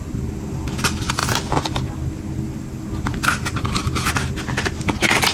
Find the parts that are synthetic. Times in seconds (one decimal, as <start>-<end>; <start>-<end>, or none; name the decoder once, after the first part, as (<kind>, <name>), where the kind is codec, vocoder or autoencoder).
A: none